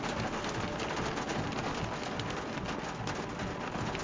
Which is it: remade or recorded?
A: recorded